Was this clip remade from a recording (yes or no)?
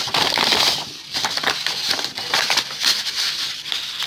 no